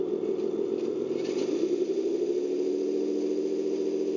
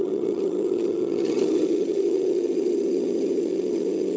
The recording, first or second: first